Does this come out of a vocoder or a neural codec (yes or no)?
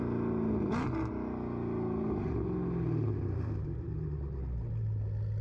no